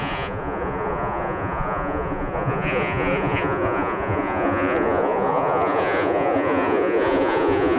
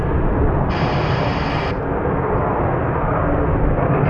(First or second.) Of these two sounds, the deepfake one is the first